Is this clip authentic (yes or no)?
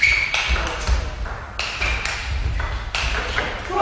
yes